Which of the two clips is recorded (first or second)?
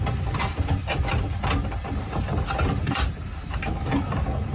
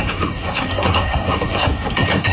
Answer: first